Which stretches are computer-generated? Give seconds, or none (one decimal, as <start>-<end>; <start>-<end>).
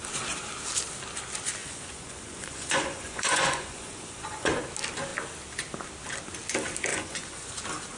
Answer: 1.6-4.6; 6.9-7.5